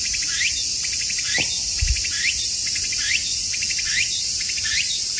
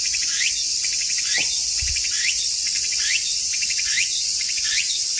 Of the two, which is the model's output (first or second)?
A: second